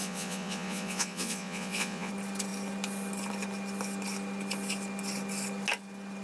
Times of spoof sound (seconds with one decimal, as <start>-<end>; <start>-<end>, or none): 0.0-2.1